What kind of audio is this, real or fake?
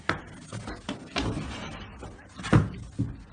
real